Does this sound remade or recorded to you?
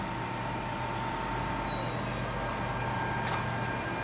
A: recorded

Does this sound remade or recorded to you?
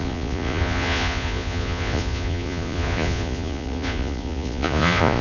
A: remade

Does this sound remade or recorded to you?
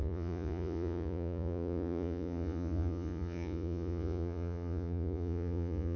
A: remade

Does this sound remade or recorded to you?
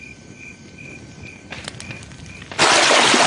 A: recorded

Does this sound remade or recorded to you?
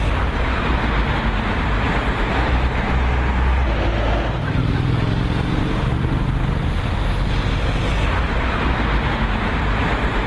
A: recorded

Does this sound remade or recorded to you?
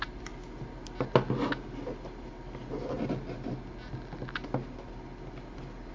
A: recorded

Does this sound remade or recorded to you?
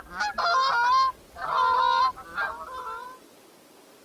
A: recorded